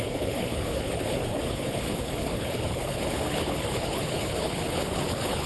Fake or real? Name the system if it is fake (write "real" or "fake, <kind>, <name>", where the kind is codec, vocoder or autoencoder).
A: fake, codec, HILCodec